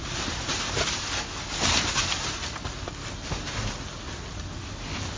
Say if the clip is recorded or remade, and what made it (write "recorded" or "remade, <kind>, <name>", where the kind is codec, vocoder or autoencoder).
recorded